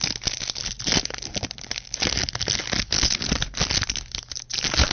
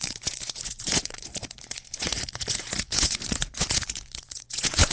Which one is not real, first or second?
second